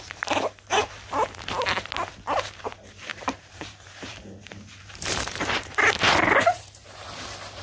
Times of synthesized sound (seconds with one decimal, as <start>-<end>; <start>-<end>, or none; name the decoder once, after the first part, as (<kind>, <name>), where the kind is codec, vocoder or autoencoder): 3.1-7.1 (vocoder, BigVGAN v2)